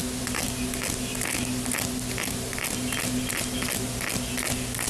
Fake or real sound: real